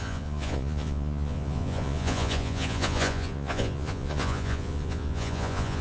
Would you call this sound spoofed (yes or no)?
yes